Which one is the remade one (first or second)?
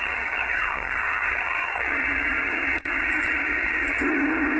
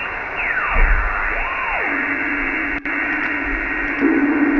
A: first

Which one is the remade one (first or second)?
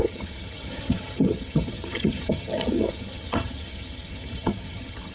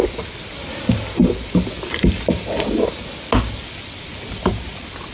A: first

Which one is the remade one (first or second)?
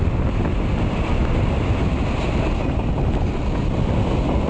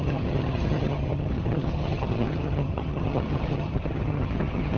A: second